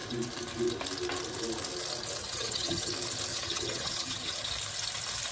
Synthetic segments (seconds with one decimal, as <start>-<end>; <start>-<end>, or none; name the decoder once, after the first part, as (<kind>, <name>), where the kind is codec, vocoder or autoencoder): 2.2-2.9 (vocoder, HiFi-GAN); 3.3-4.5